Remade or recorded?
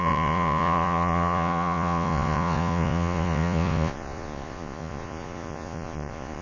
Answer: remade